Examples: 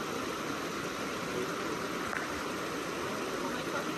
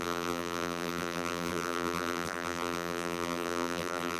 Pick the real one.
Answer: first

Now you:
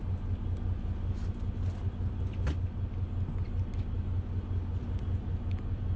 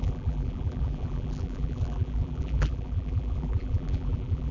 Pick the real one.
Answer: first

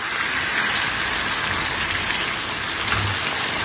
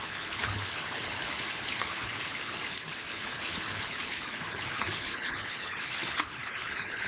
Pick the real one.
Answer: first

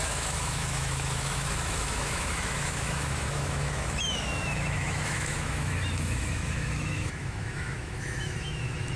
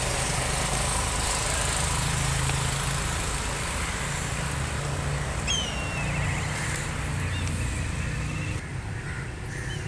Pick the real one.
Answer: second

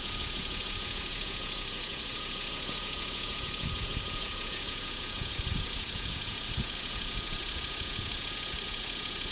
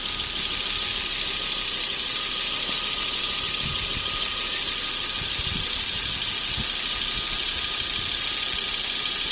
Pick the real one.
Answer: second